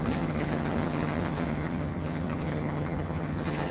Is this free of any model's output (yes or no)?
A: no